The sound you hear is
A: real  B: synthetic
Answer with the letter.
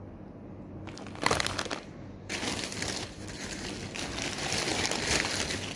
A